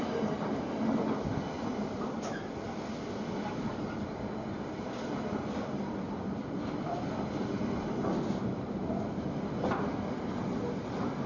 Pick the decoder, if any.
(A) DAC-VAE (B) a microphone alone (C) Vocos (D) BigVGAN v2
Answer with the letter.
B